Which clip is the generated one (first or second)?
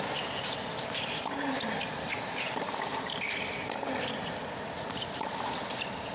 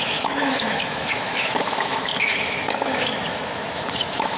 second